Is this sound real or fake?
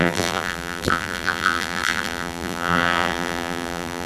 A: fake